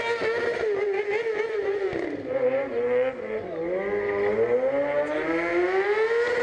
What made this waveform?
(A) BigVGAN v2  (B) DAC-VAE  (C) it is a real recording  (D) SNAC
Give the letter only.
C